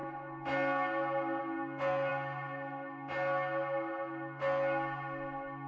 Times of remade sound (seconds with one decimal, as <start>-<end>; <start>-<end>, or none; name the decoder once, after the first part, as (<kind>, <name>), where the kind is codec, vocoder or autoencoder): none